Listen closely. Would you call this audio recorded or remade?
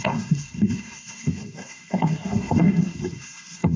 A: remade